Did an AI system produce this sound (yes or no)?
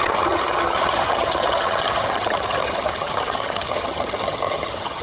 yes